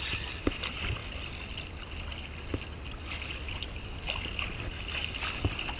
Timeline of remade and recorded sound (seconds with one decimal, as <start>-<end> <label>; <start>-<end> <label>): 0.0-5.8 recorded